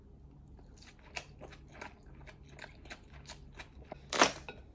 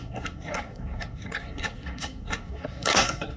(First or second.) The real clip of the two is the first